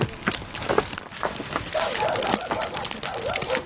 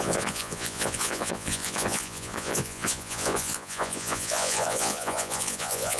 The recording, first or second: first